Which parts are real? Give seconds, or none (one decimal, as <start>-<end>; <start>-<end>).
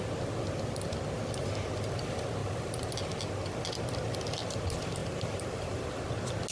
0.0-2.4; 2.9-5.0; 5.9-6.5